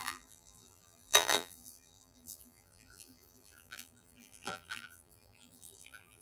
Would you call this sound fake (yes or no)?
yes